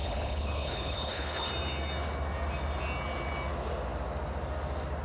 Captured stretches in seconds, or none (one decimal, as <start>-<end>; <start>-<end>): 1.5-5.0